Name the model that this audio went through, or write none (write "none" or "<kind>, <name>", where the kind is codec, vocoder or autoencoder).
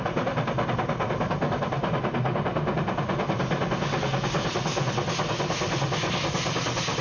none